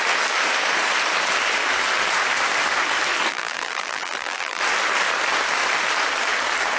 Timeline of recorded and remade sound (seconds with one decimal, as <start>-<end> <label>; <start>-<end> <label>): 0.0-3.3 recorded; 3.3-4.6 remade; 4.6-6.8 recorded

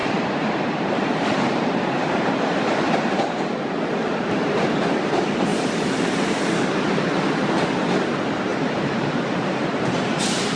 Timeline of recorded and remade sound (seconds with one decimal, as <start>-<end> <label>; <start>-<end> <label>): 0.0-2.3 remade; 2.3-5.5 recorded; 5.5-6.7 remade; 6.7-8.5 recorded; 8.5-10.6 remade

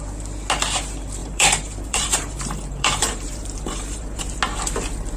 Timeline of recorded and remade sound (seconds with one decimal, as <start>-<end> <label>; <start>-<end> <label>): 0.0-1.2 recorded; 1.2-4.3 remade; 4.3-5.2 recorded